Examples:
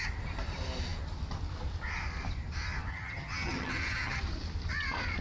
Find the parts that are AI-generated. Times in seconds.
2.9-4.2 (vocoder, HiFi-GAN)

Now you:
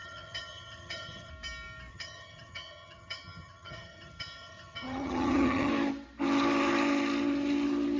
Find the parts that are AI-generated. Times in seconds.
0.0-1.3 (vocoder, HiFi-GAN); 1.9-5.7

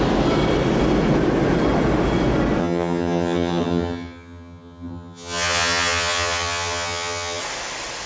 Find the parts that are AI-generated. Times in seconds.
2.6-7.4 (vocoder, HiFi-GAN)